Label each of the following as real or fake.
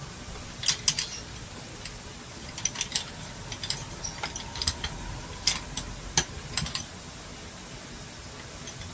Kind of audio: real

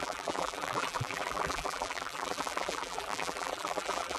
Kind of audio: fake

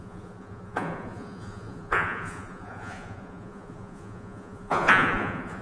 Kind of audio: fake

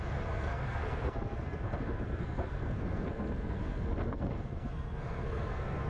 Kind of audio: fake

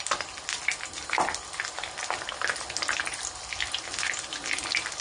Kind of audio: real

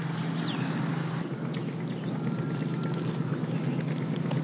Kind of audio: real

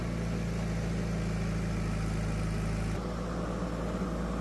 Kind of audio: real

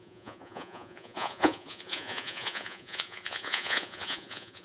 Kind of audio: fake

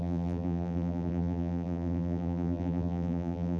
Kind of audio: fake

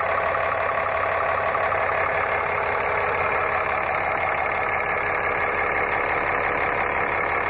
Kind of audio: real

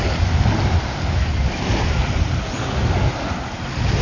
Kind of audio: real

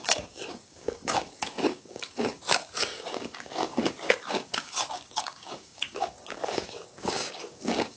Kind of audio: fake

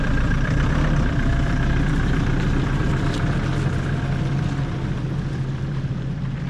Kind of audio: fake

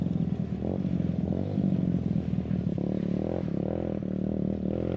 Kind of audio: real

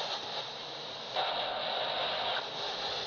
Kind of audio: real